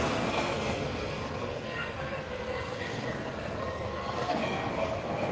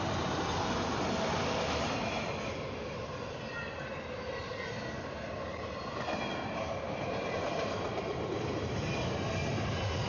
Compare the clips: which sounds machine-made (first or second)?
first